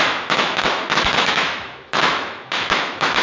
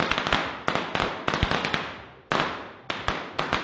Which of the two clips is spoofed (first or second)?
first